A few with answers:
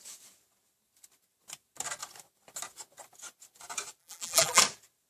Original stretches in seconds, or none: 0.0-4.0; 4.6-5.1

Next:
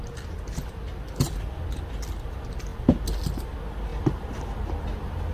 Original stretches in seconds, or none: 0.0-5.3

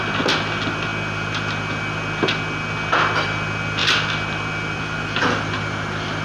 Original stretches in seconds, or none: 0.0-6.2

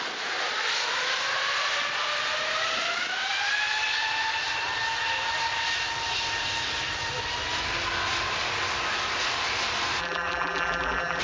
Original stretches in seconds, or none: 0.0-10.0

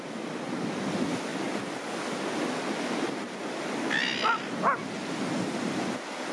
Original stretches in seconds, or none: 0.0-1.3; 3.8-6.3

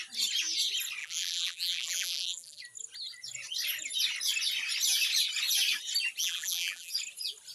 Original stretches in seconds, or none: 0.0-1.0; 2.6-6.2; 6.9-7.5